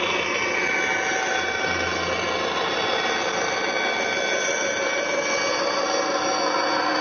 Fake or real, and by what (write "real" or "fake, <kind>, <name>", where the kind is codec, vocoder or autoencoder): real